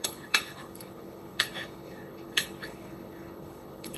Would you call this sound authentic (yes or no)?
no